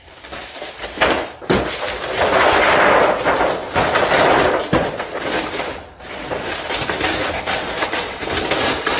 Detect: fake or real real